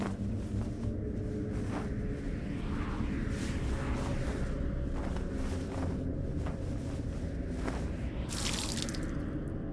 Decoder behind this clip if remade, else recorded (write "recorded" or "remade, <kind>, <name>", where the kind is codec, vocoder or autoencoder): recorded